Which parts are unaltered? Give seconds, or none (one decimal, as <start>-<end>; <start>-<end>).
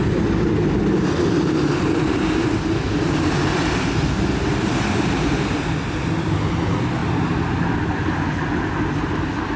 0.0-9.6